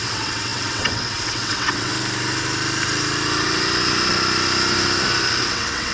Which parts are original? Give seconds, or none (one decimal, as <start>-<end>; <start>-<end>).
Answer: 1.9-5.4